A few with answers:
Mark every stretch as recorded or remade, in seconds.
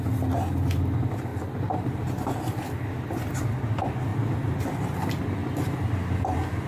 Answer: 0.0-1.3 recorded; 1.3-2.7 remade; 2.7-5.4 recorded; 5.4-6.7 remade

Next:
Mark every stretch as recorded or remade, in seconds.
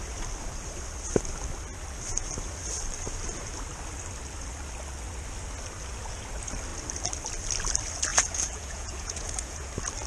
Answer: 0.0-8.1 recorded; 8.1-9.7 remade; 9.7-10.1 recorded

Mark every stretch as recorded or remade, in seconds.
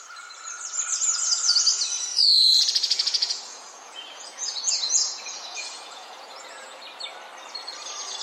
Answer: 0.0-2.1 recorded; 2.1-6.8 remade; 6.8-8.2 recorded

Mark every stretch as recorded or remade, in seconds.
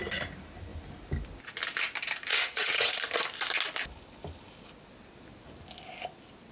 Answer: 0.0-2.3 recorded; 2.3-2.9 remade; 2.9-6.5 recorded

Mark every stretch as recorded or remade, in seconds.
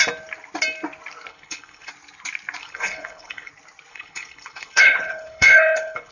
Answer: 0.0-1.3 recorded; 1.3-1.9 remade; 1.9-2.6 recorded; 2.6-3.5 remade; 3.5-3.9 recorded; 3.9-6.1 remade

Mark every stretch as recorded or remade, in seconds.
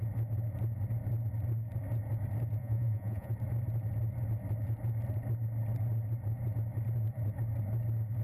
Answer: 0.0-2.6 recorded; 2.6-3.3 remade; 3.3-8.2 recorded